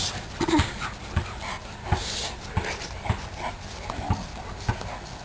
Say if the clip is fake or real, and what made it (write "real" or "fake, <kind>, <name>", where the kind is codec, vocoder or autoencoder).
real